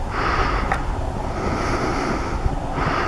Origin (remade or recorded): recorded